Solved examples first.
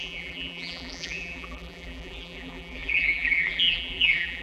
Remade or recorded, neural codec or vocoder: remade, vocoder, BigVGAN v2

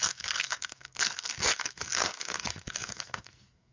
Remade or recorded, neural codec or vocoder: remade, codec, SNAC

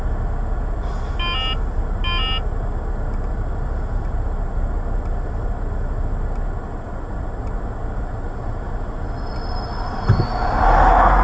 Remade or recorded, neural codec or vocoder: recorded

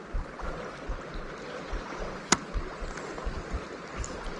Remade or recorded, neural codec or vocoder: recorded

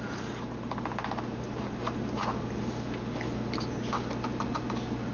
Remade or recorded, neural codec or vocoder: recorded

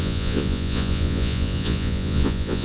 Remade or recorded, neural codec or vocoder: remade, vocoder, Vocos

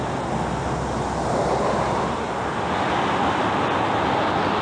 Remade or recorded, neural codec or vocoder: recorded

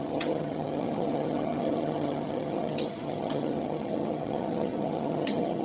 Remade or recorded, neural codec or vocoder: remade, vocoder, HiFi-GAN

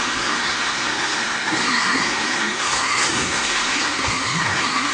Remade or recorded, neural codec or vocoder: remade, codec, SNAC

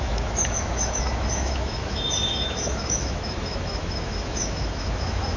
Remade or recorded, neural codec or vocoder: remade, autoencoder, DAC-VAE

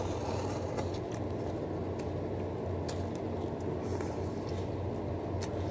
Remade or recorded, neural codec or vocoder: recorded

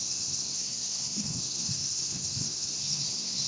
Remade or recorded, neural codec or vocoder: remade, codec, SNAC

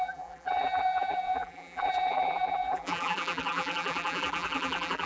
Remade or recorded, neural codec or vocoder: remade, vocoder, BigVGAN v2